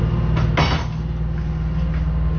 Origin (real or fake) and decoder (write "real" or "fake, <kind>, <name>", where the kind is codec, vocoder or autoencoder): real